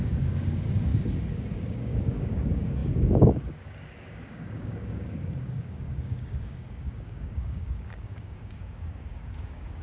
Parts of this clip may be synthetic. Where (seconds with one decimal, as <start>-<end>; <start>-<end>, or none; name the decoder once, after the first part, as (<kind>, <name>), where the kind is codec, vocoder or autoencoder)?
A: 0.0-0.9 (codec, DAC); 1.6-9.8